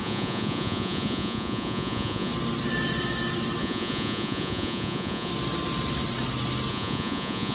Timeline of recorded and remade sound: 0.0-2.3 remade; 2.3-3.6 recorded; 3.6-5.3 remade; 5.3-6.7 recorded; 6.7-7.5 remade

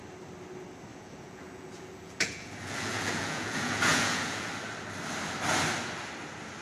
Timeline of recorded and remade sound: 0.0-0.9 recorded; 0.9-4.5 remade; 4.5-6.6 recorded

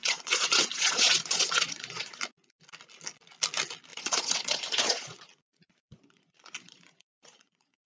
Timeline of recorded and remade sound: 0.0-2.2 remade; 2.2-3.9 recorded; 3.9-7.9 remade